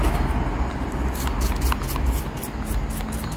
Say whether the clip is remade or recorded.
recorded